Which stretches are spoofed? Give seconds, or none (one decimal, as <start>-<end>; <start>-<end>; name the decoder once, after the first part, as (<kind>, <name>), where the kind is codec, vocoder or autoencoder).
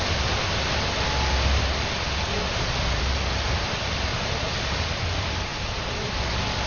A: 2.3-3.0 (vocoder, Vocos); 4.1-4.6; 5.5-6.2